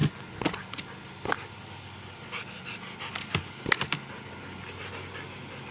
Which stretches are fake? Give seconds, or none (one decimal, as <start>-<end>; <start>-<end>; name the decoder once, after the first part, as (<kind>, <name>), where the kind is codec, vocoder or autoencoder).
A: none